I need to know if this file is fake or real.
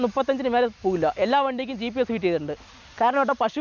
real